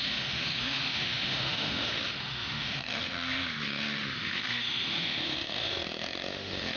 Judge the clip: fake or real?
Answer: fake